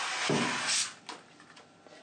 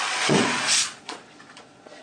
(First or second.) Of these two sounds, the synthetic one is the second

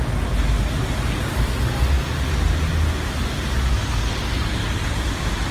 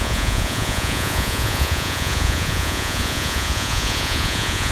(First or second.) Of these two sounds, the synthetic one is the second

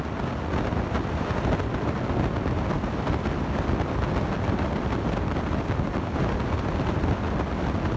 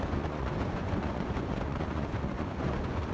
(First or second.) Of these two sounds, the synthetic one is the second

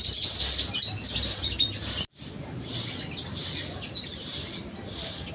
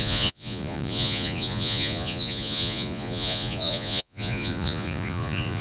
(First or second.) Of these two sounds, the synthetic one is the second